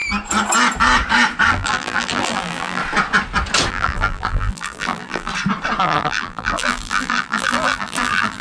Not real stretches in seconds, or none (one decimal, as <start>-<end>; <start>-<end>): 1.5-2.8; 3.7-5.3; 5.8-8.4